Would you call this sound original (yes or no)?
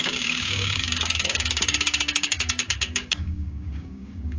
no